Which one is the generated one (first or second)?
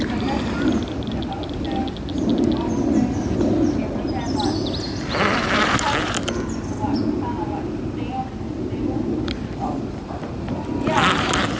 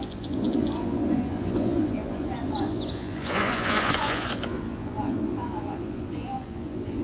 second